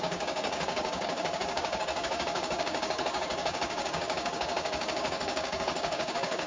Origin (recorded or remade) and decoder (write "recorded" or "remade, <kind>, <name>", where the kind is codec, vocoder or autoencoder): remade, codec, DAC